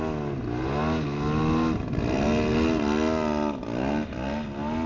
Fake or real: real